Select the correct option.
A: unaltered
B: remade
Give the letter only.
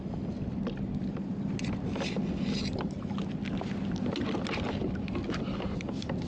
A